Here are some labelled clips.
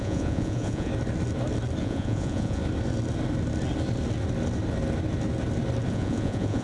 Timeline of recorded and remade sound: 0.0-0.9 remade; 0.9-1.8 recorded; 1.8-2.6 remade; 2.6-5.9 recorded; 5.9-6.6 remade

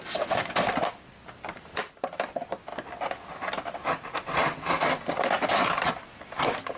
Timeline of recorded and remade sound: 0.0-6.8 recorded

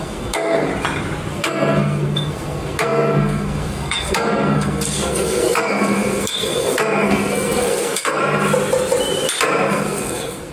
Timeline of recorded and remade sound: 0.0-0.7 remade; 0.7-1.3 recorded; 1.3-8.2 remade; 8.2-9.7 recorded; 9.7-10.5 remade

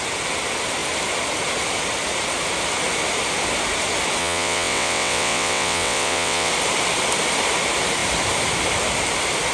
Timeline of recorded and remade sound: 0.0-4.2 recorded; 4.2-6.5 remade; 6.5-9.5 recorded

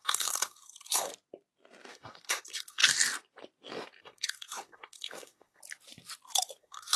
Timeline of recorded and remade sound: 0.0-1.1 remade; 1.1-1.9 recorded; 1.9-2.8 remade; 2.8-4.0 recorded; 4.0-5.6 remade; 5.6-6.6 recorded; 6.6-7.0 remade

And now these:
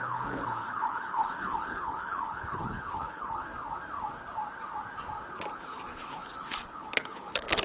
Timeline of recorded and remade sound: 0.0-3.5 remade; 3.5-5.5 recorded; 5.5-7.6 remade